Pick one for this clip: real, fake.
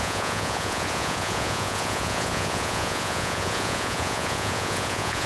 fake